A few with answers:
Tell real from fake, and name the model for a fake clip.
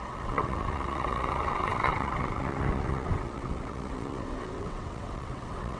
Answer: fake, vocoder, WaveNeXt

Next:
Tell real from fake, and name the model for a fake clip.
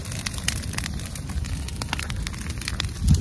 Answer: real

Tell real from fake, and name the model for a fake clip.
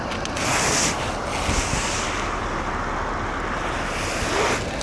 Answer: real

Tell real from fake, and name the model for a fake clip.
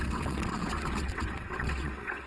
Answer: fake, vocoder, WaveNeXt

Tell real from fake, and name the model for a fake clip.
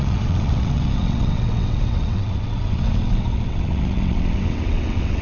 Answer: fake, vocoder, WaveNeXt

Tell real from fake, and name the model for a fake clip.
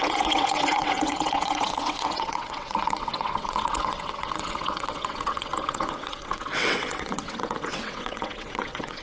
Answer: fake, vocoder, WaveNeXt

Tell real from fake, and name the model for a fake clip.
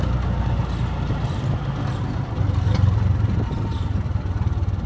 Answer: real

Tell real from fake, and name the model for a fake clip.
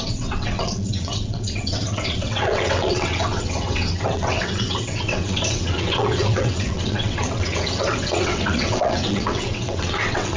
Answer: fake, vocoder, WaveNeXt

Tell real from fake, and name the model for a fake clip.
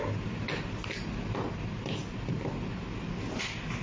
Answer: real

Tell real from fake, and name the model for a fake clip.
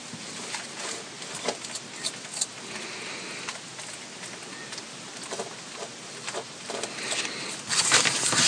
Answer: real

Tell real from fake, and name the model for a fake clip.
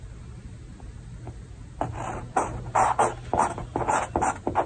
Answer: real